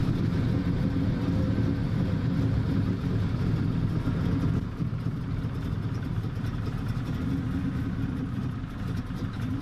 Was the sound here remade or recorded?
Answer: recorded